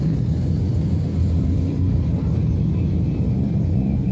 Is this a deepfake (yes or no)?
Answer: no